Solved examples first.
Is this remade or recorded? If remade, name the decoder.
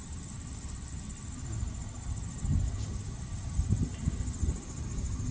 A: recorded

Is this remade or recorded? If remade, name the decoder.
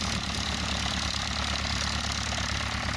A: recorded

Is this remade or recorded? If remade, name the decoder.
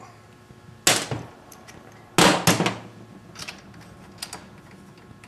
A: recorded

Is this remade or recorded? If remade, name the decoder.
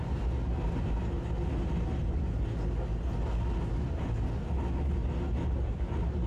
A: recorded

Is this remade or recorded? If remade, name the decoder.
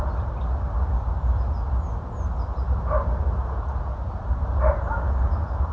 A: recorded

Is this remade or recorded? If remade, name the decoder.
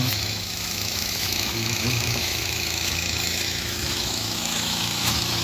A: remade, autoencoder, DAC-VAE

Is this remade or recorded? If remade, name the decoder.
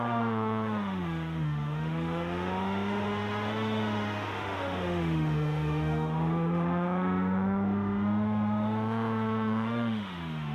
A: remade, autoencoder, DAC-VAE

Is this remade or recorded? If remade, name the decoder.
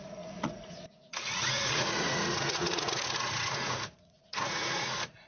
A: remade, vocoder, Vocos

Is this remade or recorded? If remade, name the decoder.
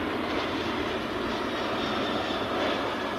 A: recorded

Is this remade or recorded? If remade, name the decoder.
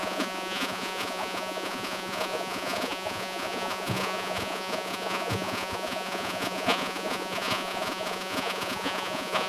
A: remade, vocoder, Vocos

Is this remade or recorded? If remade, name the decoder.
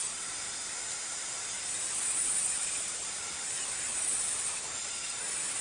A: recorded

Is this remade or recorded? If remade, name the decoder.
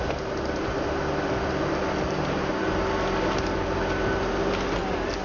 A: recorded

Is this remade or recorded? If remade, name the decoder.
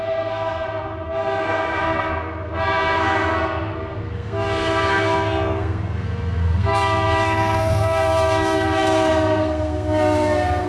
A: remade, codec, SNAC